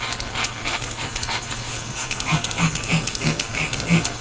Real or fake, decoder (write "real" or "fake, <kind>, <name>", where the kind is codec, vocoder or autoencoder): fake, codec, SNAC